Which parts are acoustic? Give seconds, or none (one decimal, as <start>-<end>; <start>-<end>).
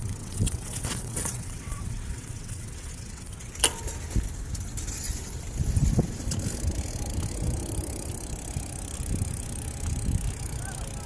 3.5-11.1